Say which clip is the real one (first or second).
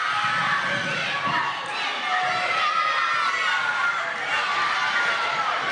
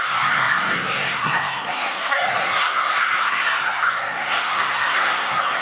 first